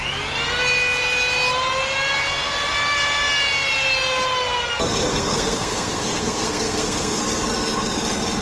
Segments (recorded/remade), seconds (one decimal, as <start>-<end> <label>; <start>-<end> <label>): 0.0-5.1 recorded; 5.1-7.2 remade; 7.2-8.4 recorded